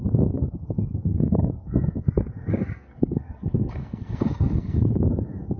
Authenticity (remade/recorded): remade